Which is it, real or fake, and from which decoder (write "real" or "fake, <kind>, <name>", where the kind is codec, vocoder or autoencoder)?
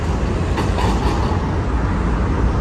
real